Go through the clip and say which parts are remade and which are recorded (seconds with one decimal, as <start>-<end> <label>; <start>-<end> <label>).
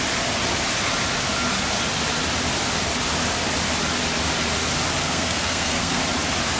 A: 0.0-5.0 recorded; 5.0-6.0 remade; 6.0-6.6 recorded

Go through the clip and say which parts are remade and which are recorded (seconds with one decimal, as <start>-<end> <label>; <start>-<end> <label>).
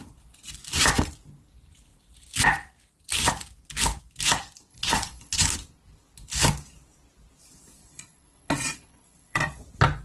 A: 0.0-4.7 recorded; 4.7-5.4 remade; 5.4-7.8 recorded; 7.8-9.6 remade; 9.6-10.0 recorded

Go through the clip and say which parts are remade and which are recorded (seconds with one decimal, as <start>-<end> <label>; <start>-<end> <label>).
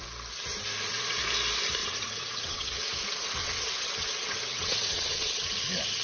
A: 0.0-1.8 recorded; 1.8-2.8 remade; 2.8-3.4 recorded; 3.4-6.0 remade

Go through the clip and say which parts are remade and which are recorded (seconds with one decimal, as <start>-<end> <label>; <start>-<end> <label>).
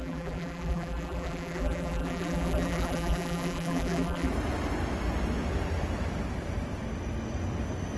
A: 0.0-4.3 remade; 4.3-8.0 recorded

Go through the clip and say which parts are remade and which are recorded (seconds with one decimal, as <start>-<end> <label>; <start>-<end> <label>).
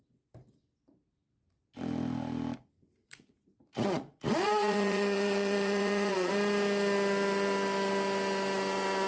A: 0.0-3.0 recorded; 3.0-6.3 remade; 6.3-9.1 recorded